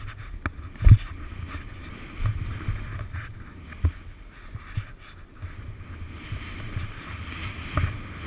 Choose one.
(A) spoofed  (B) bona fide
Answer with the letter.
B